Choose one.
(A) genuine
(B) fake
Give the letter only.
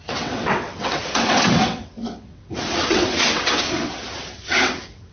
B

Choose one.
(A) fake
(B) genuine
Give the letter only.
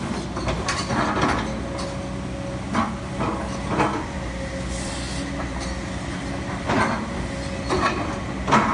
B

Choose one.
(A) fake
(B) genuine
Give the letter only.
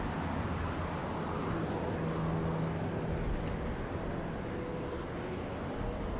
B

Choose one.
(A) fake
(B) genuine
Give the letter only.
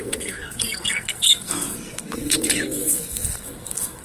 A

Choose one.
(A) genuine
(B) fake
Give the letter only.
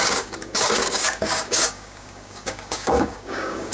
B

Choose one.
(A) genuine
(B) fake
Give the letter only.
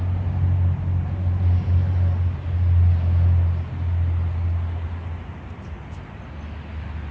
A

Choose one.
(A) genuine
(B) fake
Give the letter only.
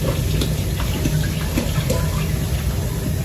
A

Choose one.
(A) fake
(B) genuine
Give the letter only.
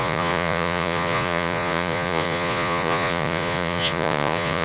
A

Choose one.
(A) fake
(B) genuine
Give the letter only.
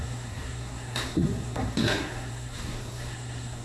A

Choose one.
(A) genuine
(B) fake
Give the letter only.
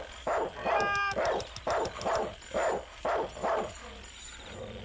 A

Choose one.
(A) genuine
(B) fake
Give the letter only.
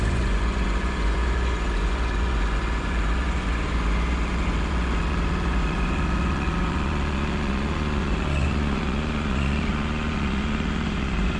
B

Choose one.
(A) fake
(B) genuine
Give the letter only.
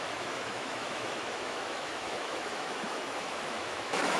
A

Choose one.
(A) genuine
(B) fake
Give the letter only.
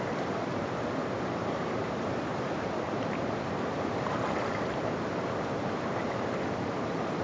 B